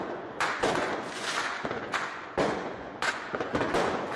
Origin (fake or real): fake